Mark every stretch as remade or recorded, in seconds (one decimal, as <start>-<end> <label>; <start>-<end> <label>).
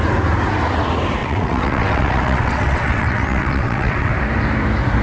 0.0-1.2 recorded; 1.2-4.1 remade; 4.1-5.0 recorded